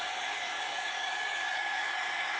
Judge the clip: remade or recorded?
remade